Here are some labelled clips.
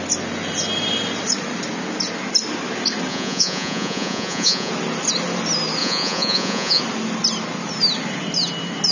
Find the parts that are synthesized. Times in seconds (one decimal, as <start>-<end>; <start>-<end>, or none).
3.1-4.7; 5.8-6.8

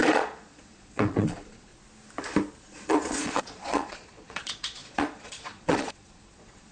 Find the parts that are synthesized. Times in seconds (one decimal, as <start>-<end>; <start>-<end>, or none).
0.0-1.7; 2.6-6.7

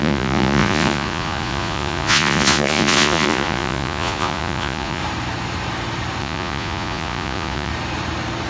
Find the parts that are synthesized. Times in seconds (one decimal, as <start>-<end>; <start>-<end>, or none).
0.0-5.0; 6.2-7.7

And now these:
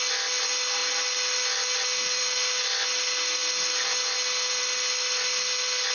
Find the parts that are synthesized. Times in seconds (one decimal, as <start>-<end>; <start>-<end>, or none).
none

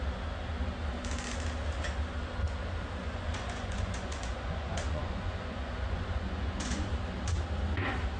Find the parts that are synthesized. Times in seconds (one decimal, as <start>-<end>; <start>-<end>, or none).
3.0-6.9

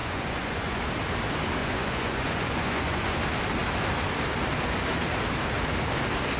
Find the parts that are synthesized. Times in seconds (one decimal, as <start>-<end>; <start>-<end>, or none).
0.0-0.8; 1.6-3.2